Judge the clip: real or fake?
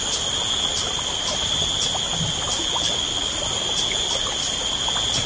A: real